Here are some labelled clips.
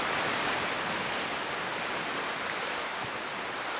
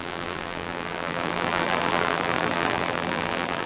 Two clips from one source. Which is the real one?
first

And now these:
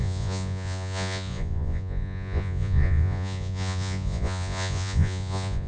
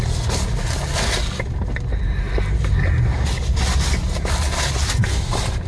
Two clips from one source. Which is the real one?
second